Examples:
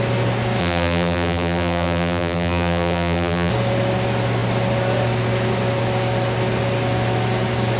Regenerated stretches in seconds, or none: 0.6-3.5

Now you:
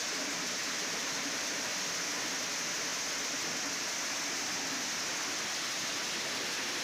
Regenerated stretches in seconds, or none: 0.6-1.7

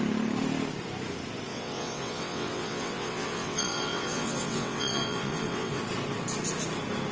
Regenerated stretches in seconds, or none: 1.5-5.8

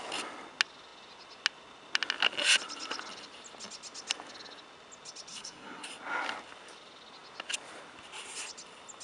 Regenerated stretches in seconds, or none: 5.3-5.9

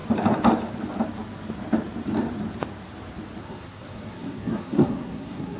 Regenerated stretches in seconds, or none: 3.4-5.6